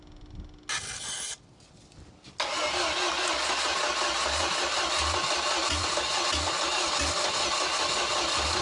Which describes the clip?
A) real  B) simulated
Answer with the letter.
A